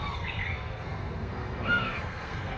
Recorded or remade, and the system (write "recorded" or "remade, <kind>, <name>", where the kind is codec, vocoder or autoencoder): remade, codec, SNAC